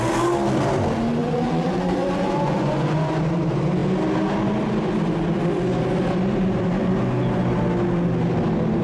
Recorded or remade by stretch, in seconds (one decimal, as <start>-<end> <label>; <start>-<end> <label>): 0.0-1.2 recorded; 1.2-3.2 remade; 3.2-8.8 recorded